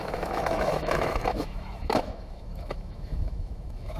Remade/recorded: remade